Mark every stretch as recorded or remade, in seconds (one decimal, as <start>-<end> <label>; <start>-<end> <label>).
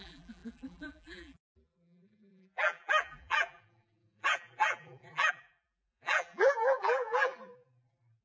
0.0-8.2 remade